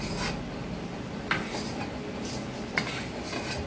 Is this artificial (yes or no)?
no